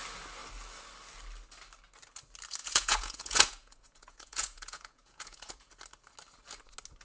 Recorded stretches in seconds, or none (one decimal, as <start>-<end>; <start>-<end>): 0.0-2.6; 5.7-7.0